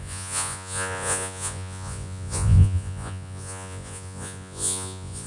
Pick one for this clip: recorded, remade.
remade